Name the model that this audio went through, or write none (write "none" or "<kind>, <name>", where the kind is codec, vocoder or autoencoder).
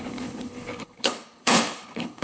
codec, HILCodec